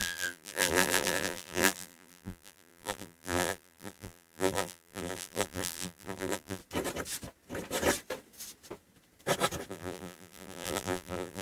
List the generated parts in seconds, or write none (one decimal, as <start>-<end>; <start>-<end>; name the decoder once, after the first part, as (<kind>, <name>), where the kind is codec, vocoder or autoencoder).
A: 0.0-6.6 (vocoder, BigVGAN v2); 9.7-11.4